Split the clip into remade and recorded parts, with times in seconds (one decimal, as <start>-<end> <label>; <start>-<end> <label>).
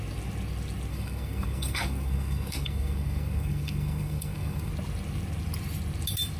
0.0-0.9 recorded; 0.9-4.7 remade; 4.7-6.4 recorded